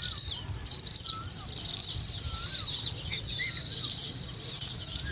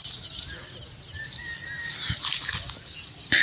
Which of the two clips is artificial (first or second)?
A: first